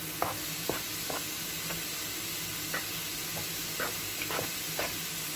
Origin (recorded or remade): recorded